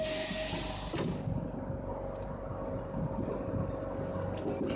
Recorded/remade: recorded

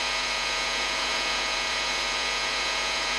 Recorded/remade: remade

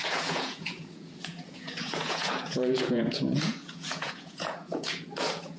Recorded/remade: remade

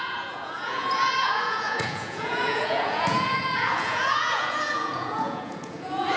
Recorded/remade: remade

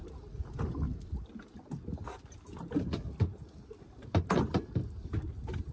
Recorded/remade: recorded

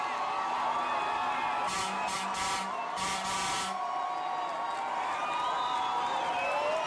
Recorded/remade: recorded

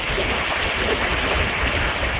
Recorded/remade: recorded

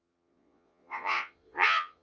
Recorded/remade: remade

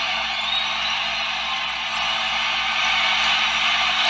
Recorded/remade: recorded